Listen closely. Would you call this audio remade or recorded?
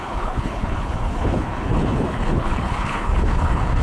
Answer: remade